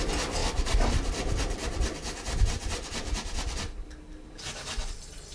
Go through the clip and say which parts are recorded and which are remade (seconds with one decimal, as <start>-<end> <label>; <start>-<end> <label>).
0.0-0.4 recorded; 0.4-3.6 remade; 3.6-5.3 recorded